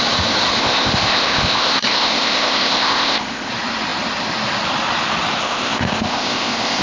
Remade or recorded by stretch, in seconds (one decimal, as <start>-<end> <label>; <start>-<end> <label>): 0.0-0.6 recorded; 0.6-3.5 remade; 3.5-5.4 recorded; 5.4-6.8 remade